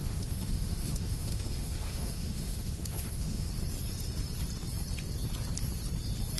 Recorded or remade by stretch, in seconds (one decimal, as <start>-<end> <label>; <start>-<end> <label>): 0.0-3.5 remade; 3.5-6.4 recorded